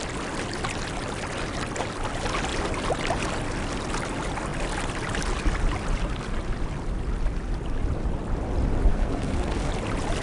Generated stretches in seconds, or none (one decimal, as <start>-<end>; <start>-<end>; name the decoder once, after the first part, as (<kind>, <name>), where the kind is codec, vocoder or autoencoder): 8.9-9.7 (codec, SNAC)